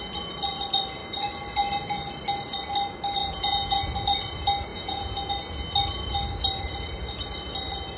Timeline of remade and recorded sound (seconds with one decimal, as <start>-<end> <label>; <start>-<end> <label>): 0.0-3.2 recorded; 3.2-3.8 remade; 3.8-4.7 recorded; 4.7-5.3 remade; 5.3-8.0 recorded